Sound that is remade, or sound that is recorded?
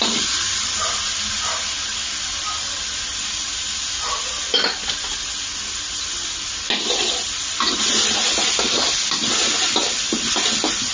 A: recorded